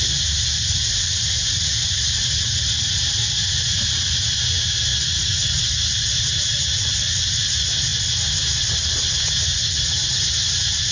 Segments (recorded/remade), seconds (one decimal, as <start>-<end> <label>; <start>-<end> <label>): 0.0-10.9 remade